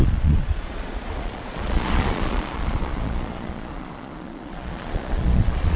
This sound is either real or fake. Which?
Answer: fake